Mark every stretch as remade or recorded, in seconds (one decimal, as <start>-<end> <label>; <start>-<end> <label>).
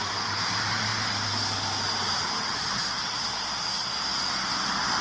0.0-5.0 recorded